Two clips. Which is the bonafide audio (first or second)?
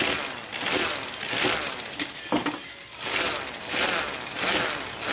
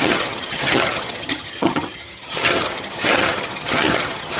first